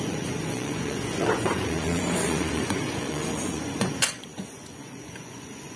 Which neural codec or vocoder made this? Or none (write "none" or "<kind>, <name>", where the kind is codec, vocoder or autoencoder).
vocoder, Vocos